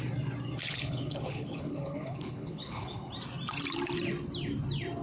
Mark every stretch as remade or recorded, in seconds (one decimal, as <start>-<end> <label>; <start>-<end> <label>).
0.0-0.6 recorded; 0.6-3.1 remade; 3.1-5.0 recorded